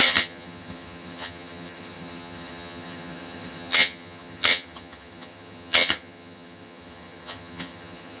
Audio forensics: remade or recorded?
remade